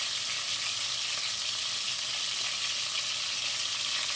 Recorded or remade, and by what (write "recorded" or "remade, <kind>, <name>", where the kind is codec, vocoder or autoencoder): recorded